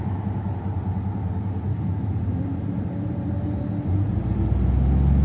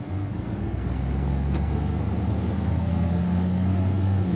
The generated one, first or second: second